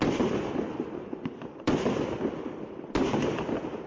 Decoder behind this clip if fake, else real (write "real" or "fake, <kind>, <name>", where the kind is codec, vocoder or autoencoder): real